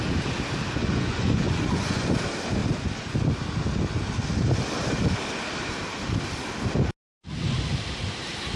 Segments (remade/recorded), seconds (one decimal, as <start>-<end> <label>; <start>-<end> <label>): 0.0-0.8 recorded; 0.8-2.2 remade; 2.2-8.6 recorded